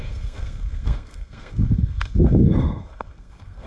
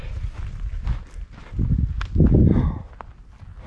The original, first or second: second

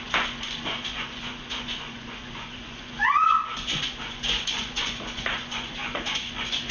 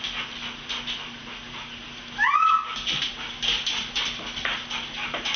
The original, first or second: second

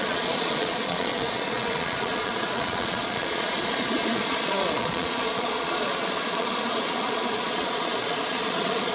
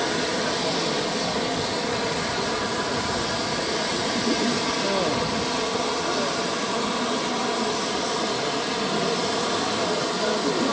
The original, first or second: second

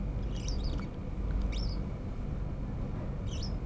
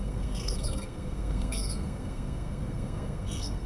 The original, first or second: first